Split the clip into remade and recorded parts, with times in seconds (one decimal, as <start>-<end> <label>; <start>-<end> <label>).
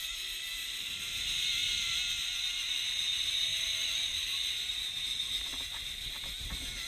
0.0-6.9 recorded